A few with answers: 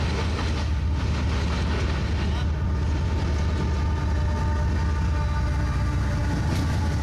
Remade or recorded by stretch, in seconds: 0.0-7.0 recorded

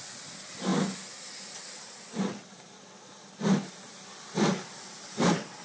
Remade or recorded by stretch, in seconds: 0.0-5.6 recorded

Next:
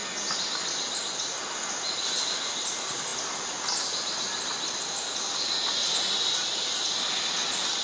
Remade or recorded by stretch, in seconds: 0.0-7.8 recorded